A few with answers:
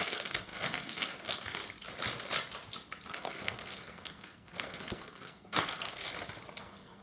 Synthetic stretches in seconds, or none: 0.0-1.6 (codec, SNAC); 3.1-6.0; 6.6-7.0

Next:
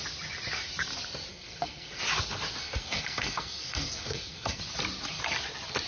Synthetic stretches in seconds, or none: 1.3-2.0 (codec, SNAC); 2.6-4.6

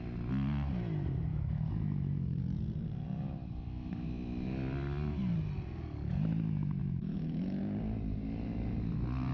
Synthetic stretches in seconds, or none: 1.3-2.4 (autoencoder, DAC-VAE); 6.8-7.6

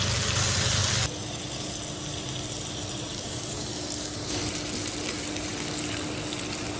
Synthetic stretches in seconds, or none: 3.1-4.4 (codec, DAC)

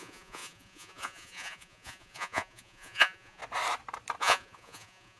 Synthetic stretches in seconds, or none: 0.0-3.4 (vocoder, Vocos); 4.2-5.2

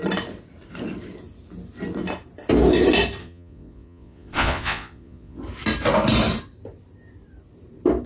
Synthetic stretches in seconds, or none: 3.2-5.4 (vocoder, Vocos)